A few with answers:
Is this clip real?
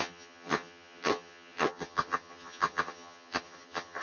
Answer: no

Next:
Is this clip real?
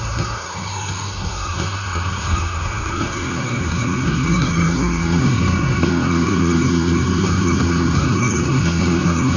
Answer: no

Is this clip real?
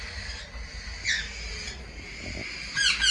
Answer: yes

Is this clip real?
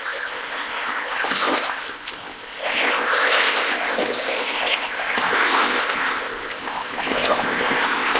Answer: no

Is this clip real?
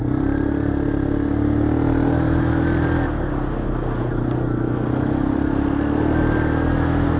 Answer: yes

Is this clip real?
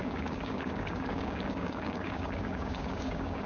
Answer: no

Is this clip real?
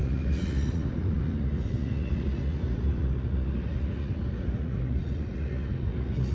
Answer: no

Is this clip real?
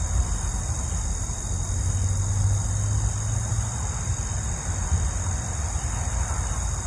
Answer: yes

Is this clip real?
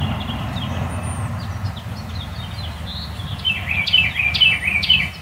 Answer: yes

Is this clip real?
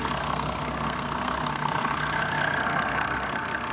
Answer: no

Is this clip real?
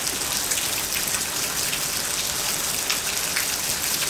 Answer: yes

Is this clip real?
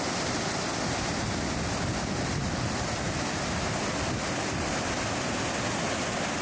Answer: yes